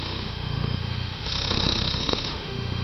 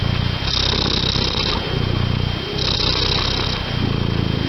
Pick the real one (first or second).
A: second